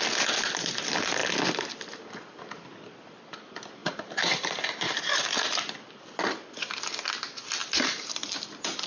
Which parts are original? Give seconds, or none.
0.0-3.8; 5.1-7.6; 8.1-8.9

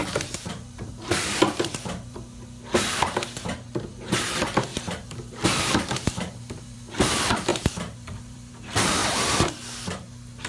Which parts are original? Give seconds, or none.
2.2-4.7; 7.1-7.5; 8.5-10.5

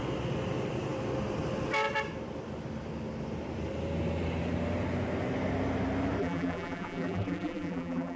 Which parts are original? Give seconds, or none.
0.0-6.2